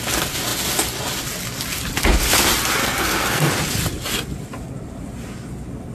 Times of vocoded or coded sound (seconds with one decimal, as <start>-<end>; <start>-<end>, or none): 2.8-3.5